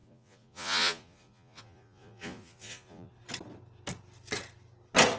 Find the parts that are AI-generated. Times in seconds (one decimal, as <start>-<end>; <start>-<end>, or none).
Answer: 0.0-3.1